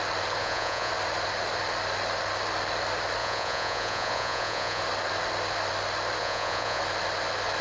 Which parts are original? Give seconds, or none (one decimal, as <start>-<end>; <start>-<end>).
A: 0.0-0.4; 0.9-3.2; 4.8-6.2; 6.8-7.6

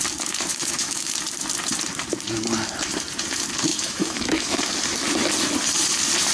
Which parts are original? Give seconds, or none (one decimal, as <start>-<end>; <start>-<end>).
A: 0.0-0.5; 1.1-3.7; 4.6-6.3